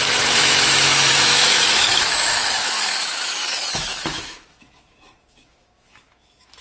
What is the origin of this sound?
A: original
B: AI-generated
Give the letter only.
B